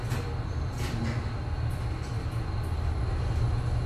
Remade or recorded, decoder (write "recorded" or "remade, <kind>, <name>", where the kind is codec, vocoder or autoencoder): recorded